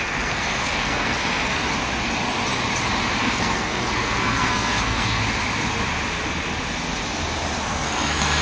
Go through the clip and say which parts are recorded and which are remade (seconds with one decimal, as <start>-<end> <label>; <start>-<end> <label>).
0.0-1.6 remade; 1.6-3.2 recorded; 3.2-5.2 remade; 5.2-7.6 recorded; 7.6-8.4 remade